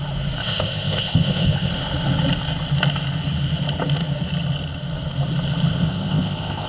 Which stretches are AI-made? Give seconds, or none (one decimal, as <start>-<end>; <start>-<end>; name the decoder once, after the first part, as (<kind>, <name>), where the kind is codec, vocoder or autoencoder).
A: 0.4-1.7 (codec, ZipCodec); 5.7-6.7